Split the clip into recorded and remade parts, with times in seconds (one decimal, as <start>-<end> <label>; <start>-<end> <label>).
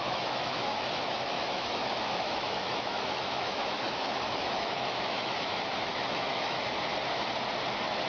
0.0-6.9 remade; 6.9-8.1 recorded